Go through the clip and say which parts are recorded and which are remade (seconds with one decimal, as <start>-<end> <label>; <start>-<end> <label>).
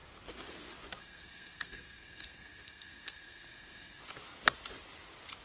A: 0.0-1.0 recorded; 1.0-4.0 remade; 4.0-5.4 recorded